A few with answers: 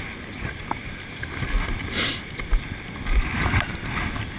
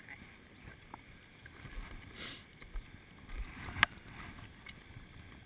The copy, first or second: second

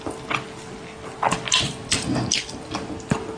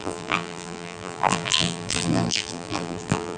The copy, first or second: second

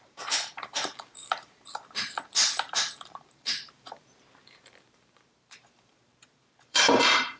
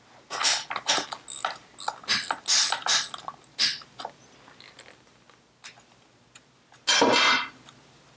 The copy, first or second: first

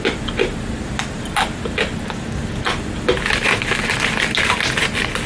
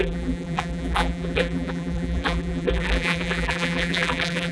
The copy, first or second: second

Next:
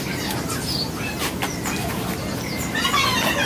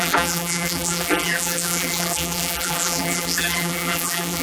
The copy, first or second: second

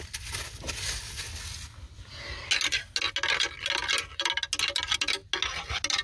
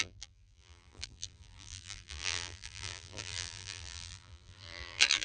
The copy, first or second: second